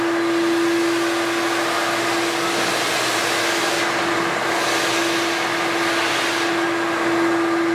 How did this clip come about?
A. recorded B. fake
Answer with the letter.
A